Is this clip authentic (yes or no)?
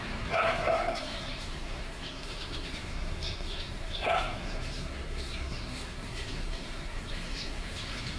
no